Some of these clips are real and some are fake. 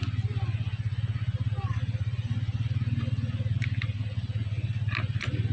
real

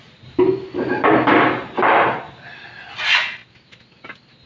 real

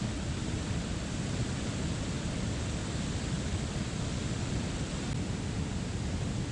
real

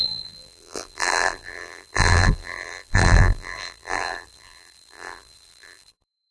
fake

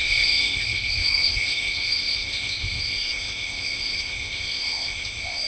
fake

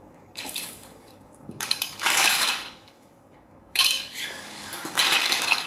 fake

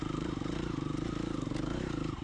fake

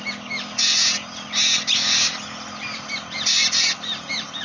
real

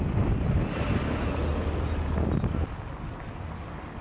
real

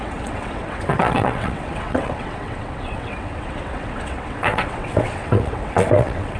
fake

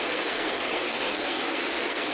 fake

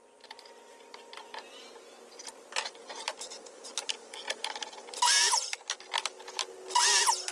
real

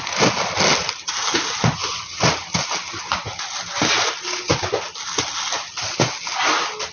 real